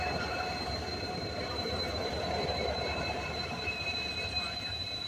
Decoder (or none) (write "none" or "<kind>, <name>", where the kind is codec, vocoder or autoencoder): vocoder, BigVGAN v2